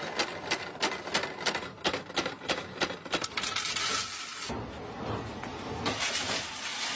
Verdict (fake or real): real